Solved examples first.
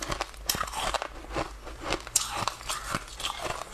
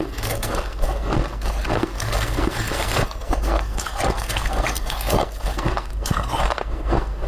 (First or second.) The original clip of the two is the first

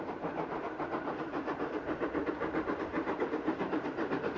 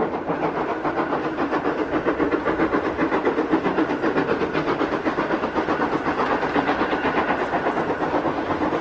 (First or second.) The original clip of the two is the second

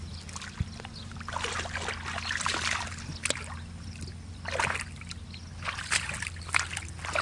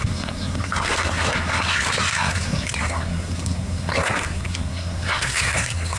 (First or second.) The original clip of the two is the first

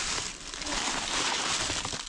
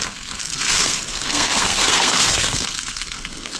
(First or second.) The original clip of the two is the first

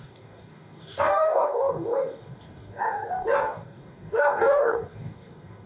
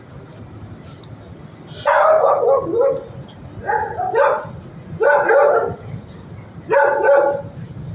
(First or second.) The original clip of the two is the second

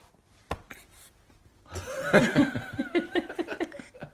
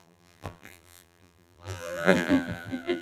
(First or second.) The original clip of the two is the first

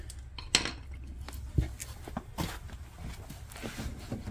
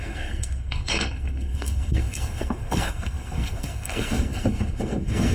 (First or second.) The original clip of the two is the first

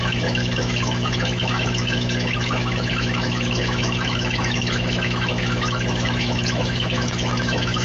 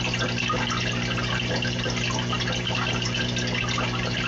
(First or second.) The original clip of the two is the second